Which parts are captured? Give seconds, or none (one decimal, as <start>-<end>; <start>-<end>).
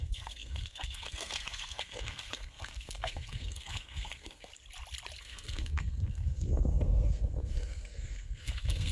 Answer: 4.5-5.2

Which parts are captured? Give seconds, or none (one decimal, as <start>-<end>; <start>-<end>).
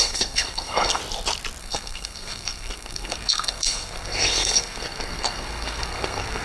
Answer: 1.0-1.6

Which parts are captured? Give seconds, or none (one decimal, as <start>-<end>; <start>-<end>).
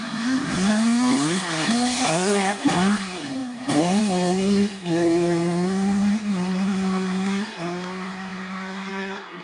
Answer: none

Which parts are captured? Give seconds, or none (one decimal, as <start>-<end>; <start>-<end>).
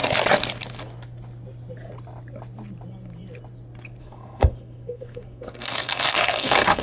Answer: 0.0-4.0